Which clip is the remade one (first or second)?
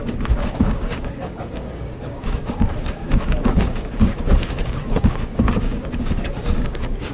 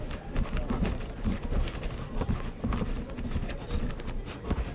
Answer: first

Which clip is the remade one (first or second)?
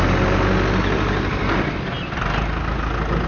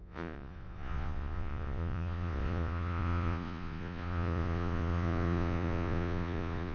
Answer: second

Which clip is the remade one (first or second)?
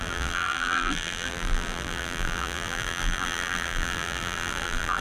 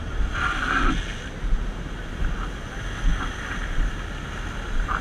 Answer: first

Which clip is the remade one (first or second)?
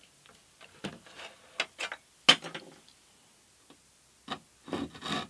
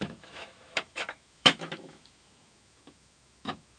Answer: second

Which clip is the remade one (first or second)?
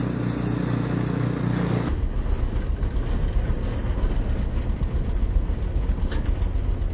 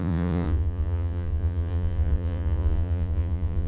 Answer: second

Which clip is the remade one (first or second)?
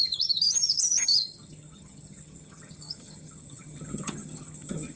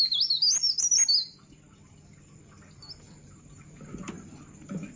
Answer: first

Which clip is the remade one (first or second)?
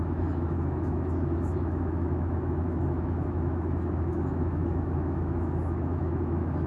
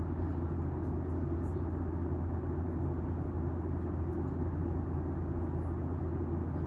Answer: first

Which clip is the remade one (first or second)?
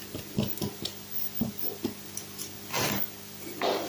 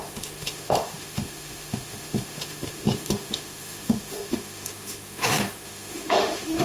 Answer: second